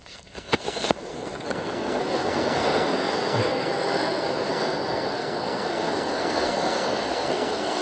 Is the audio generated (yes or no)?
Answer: yes